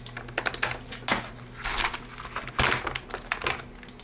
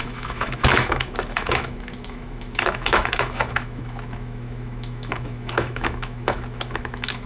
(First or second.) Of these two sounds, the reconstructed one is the second